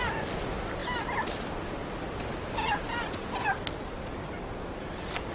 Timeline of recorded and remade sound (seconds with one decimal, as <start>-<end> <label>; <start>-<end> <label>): 0.0-0.8 recorded; 0.8-1.3 remade; 1.3-5.3 recorded